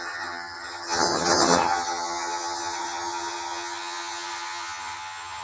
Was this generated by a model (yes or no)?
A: yes